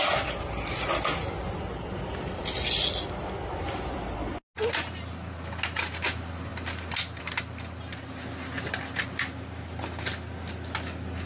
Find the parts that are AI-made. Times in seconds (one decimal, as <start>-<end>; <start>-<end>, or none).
none